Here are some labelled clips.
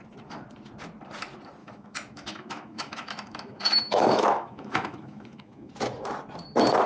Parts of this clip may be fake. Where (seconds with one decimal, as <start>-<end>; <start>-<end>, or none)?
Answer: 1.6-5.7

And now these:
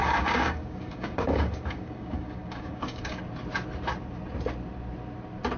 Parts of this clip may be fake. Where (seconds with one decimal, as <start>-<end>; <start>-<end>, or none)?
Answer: 0.0-3.2

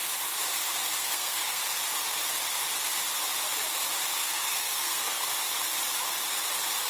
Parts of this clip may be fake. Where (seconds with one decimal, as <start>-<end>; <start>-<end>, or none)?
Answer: 1.0-1.6; 4.2-5.3

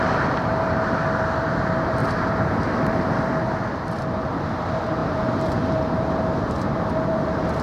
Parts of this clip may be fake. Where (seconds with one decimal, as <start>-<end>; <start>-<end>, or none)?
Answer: 0.0-3.3; 4.6-7.6

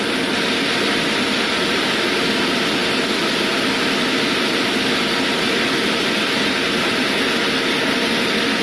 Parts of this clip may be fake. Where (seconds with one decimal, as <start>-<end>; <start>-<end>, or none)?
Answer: none

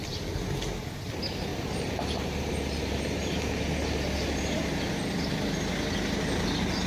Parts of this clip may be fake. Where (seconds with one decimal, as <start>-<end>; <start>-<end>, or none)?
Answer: 1.5-4.6

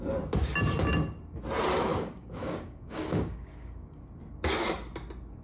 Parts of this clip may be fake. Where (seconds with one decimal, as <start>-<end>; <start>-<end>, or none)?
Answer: 1.9-4.0

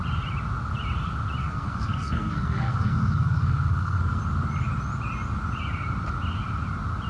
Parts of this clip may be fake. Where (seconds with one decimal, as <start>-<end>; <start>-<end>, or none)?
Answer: 1.4-4.2